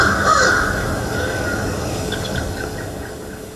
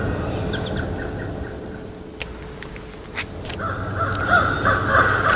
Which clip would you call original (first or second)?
second